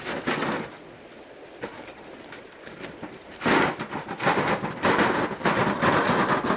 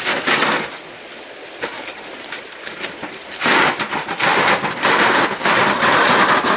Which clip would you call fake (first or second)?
second